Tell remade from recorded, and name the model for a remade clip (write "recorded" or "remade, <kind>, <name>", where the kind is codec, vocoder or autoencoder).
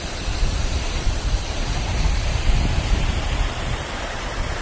remade, vocoder, BigVGAN v2